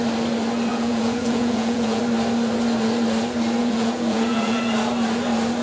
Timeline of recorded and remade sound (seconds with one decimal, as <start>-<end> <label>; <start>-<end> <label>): 0.0-0.7 recorded; 0.7-2.0 remade; 2.0-3.6 recorded; 3.6-4.6 remade; 4.6-5.6 recorded